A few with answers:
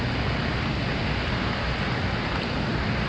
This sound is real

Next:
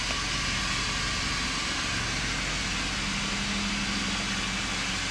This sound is real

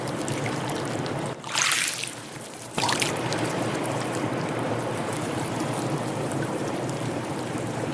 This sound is fake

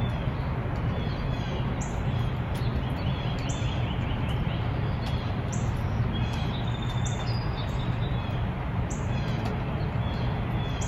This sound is real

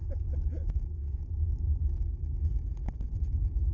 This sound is real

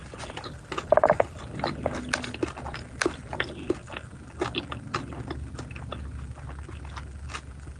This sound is real